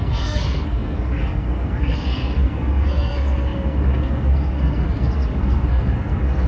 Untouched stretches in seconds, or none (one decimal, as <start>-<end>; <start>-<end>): none